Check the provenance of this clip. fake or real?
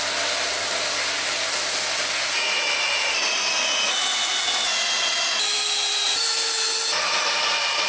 real